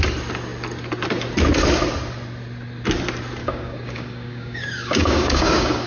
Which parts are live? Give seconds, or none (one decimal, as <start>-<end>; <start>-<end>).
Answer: 0.0-3.4